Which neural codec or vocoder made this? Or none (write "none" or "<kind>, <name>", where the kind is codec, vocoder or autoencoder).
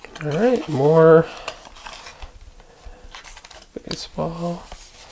none